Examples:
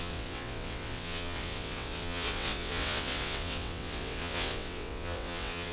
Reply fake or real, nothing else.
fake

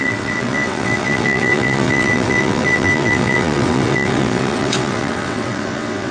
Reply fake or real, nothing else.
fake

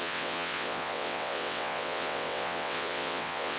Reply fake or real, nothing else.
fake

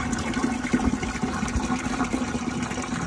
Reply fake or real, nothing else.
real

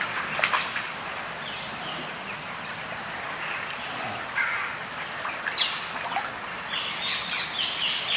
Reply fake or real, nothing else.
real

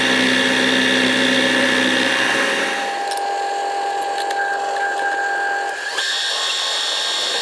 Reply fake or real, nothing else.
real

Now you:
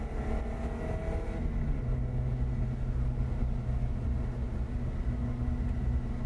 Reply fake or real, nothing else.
real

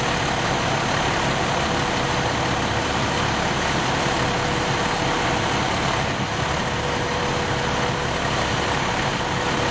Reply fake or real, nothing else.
real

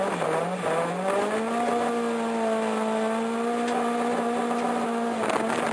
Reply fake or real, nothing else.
real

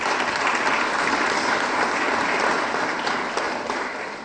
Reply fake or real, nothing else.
real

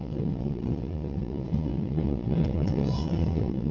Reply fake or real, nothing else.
fake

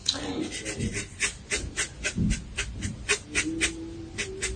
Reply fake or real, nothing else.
real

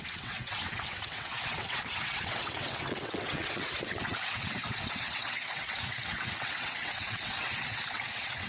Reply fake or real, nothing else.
fake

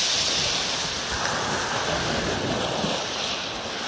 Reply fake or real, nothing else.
real